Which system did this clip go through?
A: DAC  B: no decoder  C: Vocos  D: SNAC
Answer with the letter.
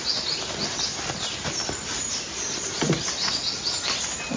B